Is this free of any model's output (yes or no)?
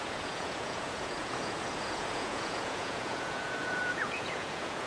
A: no